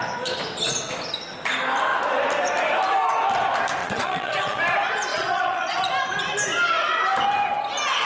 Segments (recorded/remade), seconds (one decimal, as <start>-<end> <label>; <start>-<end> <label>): 0.0-3.8 recorded; 3.8-4.6 remade; 4.6-5.1 recorded; 5.1-5.8 remade; 5.8-8.0 recorded